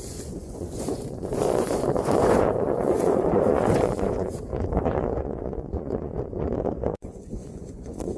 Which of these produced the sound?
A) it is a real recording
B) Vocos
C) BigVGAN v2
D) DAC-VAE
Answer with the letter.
B